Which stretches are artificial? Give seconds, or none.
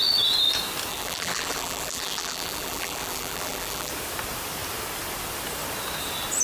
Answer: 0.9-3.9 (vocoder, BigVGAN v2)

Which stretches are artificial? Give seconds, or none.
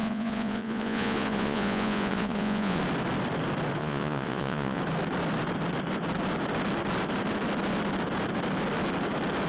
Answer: 0.0-2.8 (vocoder, Vocos); 3.8-4.8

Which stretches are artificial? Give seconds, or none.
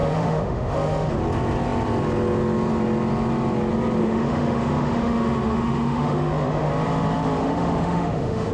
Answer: 0.0-1.1 (autoencoder, DAC-VAE); 4.0-6.7; 7.4-8.5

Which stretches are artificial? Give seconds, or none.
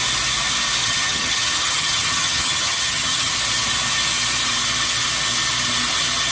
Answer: 0.8-3.3 (vocoder, HiFi-GAN)